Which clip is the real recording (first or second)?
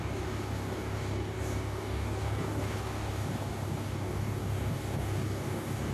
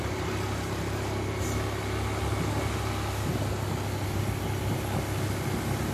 second